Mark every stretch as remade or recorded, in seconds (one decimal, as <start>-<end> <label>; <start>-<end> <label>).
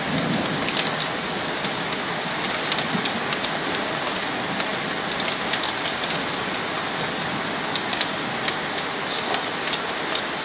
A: 0.0-10.4 recorded